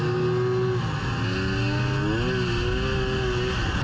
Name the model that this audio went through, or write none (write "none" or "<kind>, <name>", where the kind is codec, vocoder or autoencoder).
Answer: none